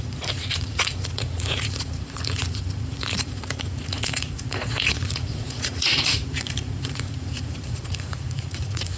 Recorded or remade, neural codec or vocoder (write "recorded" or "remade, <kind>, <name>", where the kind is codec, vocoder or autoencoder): remade, vocoder, Vocos